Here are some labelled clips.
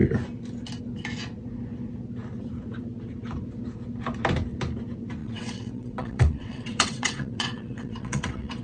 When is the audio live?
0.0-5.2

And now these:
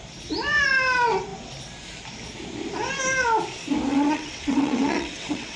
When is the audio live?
0.0-3.9

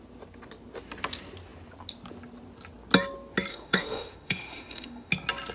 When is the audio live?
0.0-3.5; 5.1-5.5

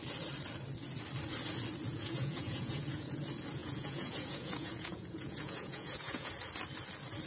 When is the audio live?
0.0-1.9; 3.1-3.6; 6.3-7.3